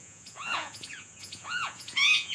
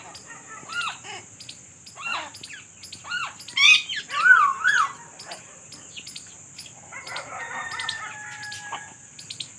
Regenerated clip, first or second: first